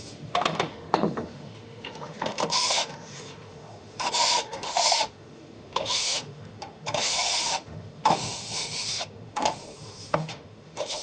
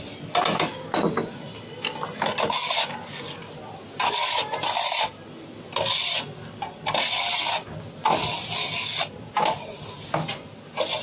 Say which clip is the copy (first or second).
first